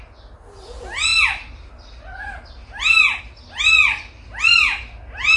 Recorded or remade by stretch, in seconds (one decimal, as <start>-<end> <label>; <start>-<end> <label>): 0.0-5.4 recorded